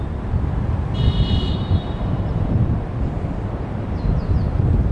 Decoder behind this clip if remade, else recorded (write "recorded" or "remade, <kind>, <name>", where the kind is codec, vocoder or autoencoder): remade, vocoder, BigVGAN v2